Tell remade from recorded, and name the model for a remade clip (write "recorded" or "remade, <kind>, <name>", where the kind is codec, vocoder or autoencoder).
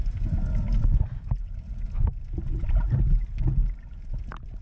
recorded